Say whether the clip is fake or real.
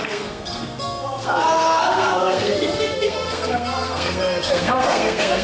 fake